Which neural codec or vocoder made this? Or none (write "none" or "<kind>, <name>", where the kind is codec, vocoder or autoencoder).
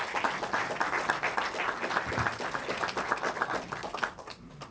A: none